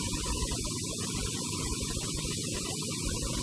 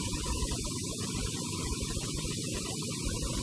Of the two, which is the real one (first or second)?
first